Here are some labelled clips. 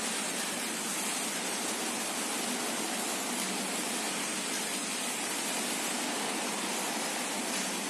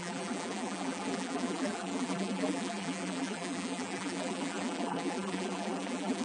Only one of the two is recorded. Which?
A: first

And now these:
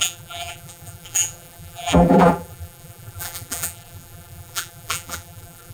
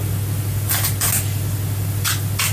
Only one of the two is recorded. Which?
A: second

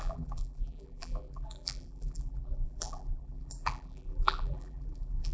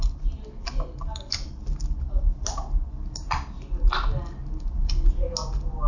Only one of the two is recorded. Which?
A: second